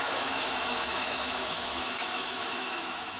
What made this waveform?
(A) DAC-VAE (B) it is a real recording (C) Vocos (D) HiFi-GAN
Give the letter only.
A